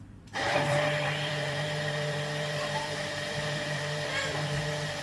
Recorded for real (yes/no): no